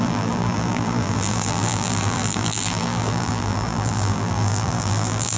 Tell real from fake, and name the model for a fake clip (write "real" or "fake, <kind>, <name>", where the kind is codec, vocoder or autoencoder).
fake, vocoder, BigVGAN v2